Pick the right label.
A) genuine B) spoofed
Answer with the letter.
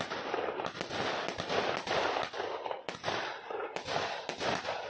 A